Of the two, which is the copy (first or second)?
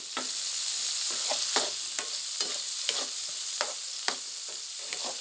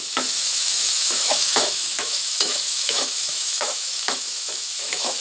second